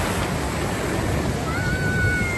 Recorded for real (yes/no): yes